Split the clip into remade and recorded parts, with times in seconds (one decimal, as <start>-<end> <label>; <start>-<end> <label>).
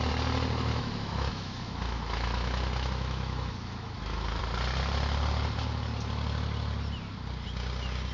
0.0-0.7 recorded; 0.7-4.4 remade; 4.4-8.1 recorded